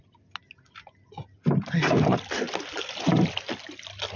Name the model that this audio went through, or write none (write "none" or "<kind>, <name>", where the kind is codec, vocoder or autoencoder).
none